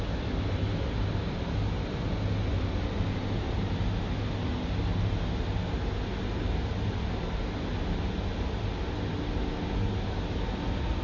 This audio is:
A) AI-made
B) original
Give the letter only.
B